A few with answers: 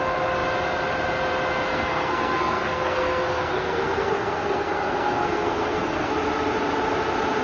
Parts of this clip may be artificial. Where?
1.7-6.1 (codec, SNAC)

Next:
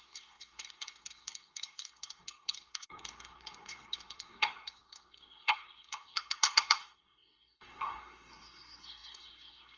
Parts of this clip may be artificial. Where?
0.0-9.8 (codec, SNAC)

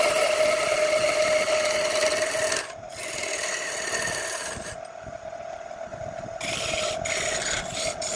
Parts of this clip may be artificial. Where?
none

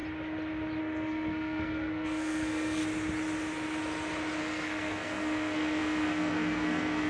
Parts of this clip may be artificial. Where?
0.8-2.8 (codec, SNAC); 4.4-7.1

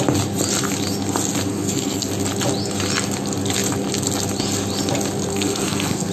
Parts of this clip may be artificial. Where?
1.5-2.1 (codec, SNAC); 5.3-6.1